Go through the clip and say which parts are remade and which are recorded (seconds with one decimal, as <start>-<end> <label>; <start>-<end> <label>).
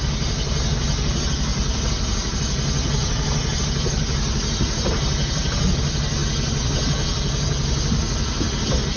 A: 0.0-9.0 recorded